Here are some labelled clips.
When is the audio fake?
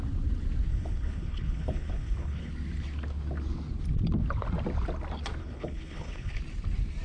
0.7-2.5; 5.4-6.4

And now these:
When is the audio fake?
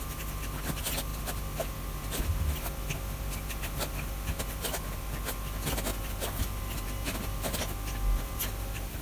none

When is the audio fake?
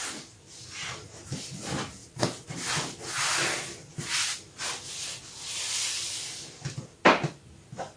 none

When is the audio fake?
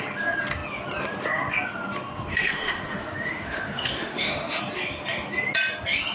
2.3-4.6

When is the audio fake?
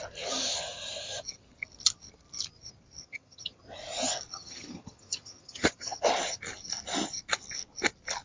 3.0-3.6; 4.3-6.0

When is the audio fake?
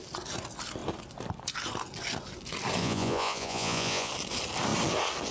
2.8-4.1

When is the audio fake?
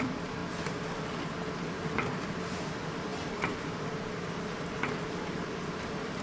0.0-6.2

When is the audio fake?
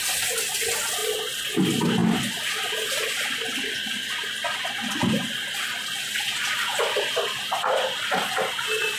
none